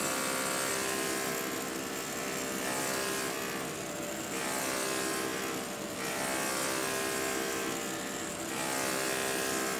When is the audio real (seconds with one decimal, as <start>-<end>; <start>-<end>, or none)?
0.0-9.8